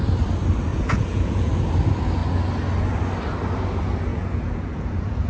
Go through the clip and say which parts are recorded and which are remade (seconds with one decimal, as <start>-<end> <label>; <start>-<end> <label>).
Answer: 0.0-0.7 recorded; 0.7-1.5 remade; 1.5-4.1 recorded; 4.1-5.3 remade